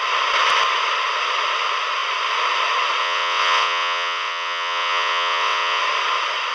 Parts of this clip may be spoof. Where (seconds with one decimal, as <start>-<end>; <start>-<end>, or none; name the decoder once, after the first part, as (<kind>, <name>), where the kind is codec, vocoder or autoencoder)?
3.0-5.8 (vocoder, WaveNeXt)